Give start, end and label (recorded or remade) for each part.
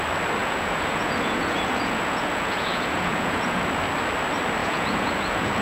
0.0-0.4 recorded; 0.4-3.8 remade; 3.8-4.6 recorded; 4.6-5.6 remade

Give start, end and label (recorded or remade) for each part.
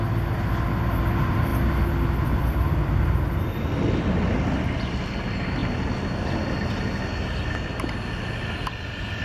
0.0-9.2 recorded